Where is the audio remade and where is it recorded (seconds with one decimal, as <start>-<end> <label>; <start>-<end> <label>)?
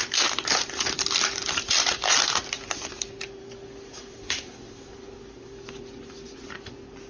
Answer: 0.0-3.4 recorded; 3.4-5.8 remade; 5.8-7.1 recorded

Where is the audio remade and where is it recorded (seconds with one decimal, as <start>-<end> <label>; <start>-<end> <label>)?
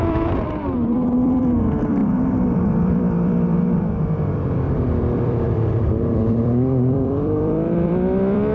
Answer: 0.0-8.5 remade